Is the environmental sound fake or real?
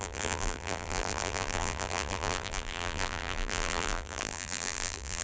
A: fake